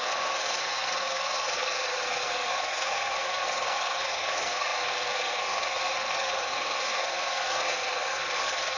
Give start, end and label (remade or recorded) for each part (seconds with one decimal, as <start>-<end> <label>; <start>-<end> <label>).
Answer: 0.0-8.8 remade